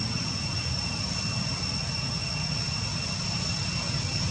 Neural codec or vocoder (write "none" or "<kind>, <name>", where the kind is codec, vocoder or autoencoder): none